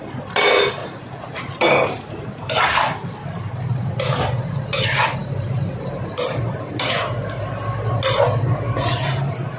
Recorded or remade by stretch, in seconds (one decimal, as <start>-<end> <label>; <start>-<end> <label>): 0.0-0.8 recorded; 0.8-1.4 remade; 1.4-9.6 recorded